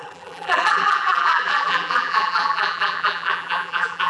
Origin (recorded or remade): remade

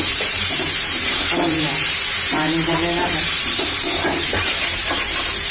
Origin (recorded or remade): remade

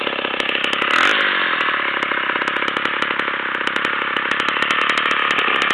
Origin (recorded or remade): recorded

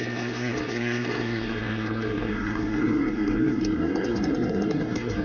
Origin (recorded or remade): remade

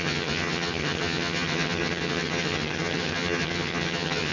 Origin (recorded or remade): remade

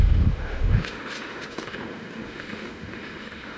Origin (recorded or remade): remade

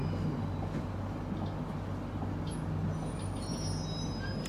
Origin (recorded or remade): recorded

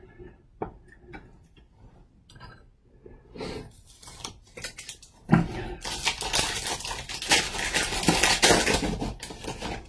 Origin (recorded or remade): recorded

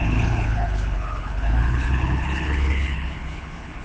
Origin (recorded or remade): remade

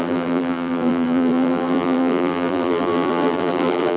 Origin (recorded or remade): remade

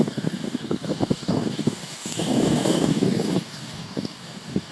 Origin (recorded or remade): remade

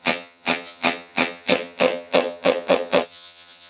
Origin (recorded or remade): remade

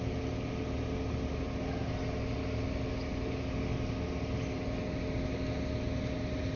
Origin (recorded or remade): recorded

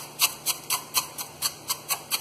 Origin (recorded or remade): recorded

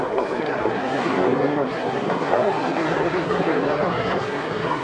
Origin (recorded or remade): remade